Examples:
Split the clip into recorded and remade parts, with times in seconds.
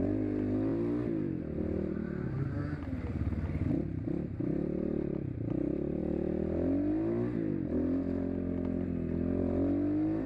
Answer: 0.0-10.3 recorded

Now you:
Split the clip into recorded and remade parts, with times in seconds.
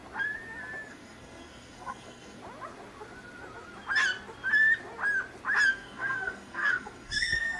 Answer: 0.0-0.9 recorded; 0.9-2.4 remade; 2.4-5.7 recorded; 5.7-7.6 remade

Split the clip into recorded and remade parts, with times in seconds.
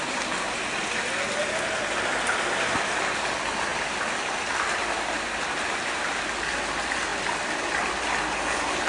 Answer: 0.0-8.9 recorded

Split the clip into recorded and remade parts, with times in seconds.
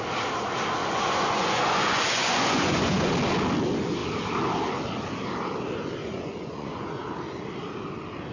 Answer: 0.0-0.8 recorded; 0.8-3.1 remade; 3.1-6.0 recorded; 6.0-7.0 remade; 7.0-8.3 recorded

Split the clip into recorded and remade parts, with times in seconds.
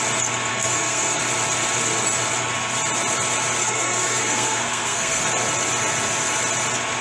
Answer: 0.0-0.5 recorded; 0.5-1.2 remade; 1.2-3.6 recorded; 3.6-5.2 remade; 5.2-7.0 recorded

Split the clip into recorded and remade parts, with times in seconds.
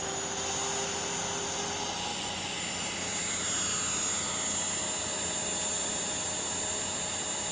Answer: 0.0-2.1 recorded; 2.1-2.6 remade; 2.6-7.5 recorded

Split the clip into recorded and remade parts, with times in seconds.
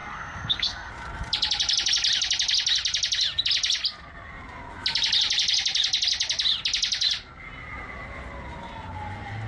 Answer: 0.0-0.9 remade; 0.9-9.5 recorded